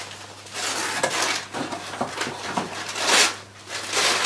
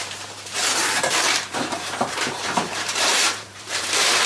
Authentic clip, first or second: first